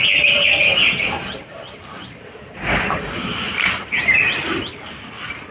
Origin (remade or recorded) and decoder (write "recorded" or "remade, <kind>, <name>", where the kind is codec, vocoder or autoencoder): recorded